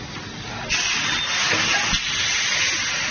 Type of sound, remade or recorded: recorded